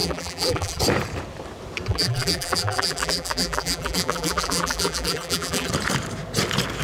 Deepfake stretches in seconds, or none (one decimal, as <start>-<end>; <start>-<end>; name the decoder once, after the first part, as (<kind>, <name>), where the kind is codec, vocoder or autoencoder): 0.0-0.8 (vocoder, BigVGAN v2); 1.9-5.7